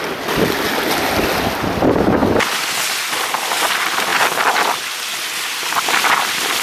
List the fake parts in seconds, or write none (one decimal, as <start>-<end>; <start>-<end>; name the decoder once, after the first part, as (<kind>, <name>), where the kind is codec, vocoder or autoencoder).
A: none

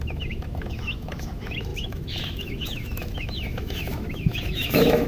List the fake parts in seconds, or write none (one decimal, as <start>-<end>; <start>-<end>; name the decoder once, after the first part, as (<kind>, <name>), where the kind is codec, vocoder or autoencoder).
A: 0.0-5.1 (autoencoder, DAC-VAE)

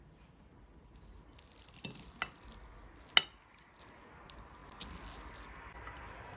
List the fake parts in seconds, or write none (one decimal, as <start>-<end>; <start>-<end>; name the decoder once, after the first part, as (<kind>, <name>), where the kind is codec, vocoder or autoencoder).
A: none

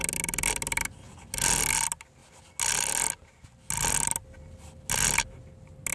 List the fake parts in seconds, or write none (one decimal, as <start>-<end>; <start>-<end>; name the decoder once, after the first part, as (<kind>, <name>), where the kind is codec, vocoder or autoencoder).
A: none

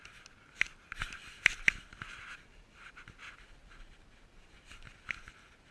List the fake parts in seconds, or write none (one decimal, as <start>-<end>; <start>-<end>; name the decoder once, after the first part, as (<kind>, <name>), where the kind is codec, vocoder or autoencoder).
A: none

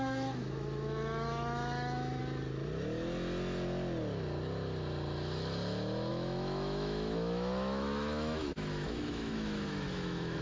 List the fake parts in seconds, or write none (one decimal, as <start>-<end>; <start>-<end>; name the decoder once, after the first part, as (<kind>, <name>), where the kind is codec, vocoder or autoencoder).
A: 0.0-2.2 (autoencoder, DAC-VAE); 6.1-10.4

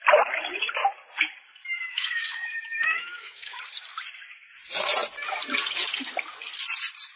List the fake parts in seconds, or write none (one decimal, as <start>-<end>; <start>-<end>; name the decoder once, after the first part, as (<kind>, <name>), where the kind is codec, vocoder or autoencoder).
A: 1.6-3.6 (autoencoder, DAC-VAE)